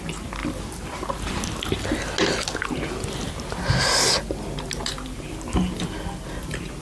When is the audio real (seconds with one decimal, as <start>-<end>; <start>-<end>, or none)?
0.0-6.8